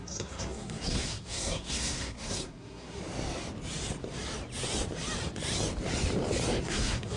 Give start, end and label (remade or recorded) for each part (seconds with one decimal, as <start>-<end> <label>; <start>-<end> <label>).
0.0-3.0 remade; 3.0-6.6 recorded; 6.6-7.2 remade